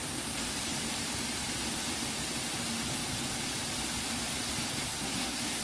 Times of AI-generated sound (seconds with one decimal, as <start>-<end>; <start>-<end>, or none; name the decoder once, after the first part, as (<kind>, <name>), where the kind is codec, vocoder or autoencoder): 4.9-5.6 (codec, SNAC)